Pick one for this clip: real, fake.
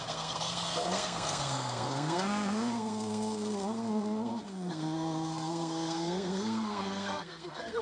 fake